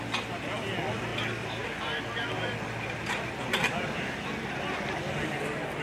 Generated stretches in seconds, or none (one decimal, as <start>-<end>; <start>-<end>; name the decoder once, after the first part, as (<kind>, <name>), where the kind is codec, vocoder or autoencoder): none

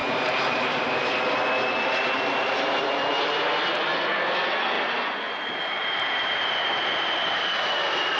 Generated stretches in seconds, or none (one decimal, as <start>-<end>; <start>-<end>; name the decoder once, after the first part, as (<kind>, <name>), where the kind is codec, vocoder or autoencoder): 0.0-1.1 (vocoder, BigVGAN v2); 5.8-6.7

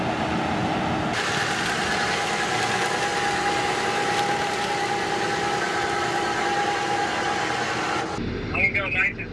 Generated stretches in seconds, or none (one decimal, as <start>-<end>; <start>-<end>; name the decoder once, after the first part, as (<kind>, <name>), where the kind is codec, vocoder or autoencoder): none

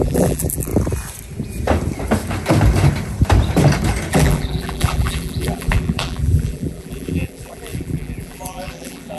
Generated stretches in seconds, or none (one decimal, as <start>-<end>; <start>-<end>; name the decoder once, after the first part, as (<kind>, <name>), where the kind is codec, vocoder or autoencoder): 0.0-0.7 (vocoder, BigVGAN v2); 4.1-9.2

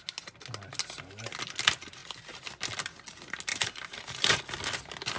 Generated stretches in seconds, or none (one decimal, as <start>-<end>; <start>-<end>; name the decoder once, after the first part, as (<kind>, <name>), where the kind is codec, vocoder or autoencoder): 3.5-4.4 (vocoder, BigVGAN v2)

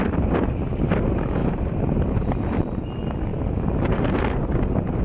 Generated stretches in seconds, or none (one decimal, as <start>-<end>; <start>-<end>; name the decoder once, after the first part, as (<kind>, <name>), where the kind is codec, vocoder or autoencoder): 1.4-2.8 (vocoder, BigVGAN v2); 3.3-5.0

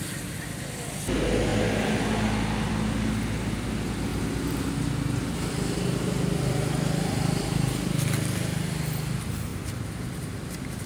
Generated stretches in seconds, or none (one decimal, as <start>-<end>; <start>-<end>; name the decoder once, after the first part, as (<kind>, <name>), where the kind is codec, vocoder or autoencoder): 9.5-10.9 (vocoder, BigVGAN v2)